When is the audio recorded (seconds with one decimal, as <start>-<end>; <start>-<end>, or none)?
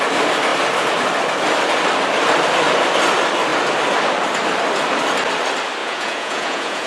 0.0-5.8